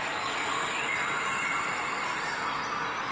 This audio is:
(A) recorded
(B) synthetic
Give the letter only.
A